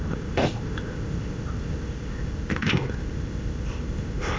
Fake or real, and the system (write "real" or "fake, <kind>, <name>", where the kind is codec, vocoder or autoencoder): fake, codec, ZipCodec